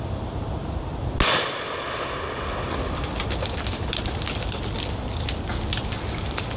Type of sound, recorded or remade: recorded